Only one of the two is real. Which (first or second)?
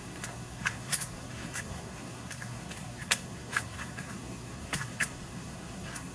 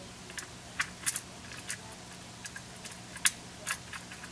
second